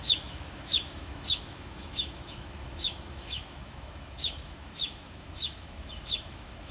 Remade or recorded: remade